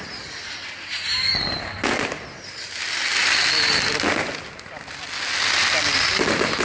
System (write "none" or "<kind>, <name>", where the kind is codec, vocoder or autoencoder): none